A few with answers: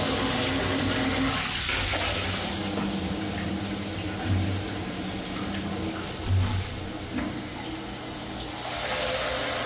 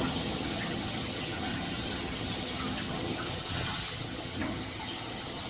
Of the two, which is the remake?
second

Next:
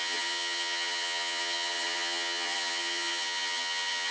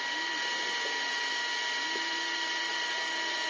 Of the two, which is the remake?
first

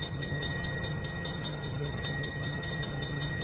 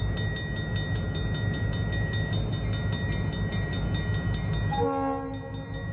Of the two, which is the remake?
first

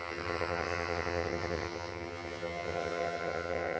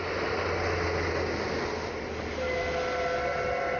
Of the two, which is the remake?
first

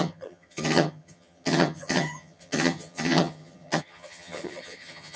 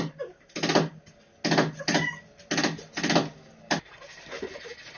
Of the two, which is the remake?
first